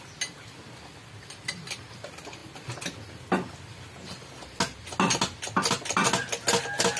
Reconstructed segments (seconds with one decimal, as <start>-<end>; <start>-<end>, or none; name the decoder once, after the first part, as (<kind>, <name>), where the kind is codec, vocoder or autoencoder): none

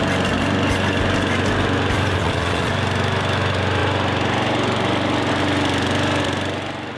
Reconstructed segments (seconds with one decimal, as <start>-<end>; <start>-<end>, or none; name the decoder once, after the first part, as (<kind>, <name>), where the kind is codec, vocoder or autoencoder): 2.2-2.7 (vocoder, WaveNeXt)

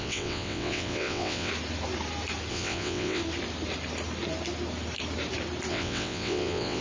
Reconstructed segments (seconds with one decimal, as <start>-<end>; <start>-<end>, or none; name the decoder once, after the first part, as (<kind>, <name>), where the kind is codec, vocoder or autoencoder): 0.0-1.5 (vocoder, WaveNeXt); 2.5-3.2; 5.7-6.8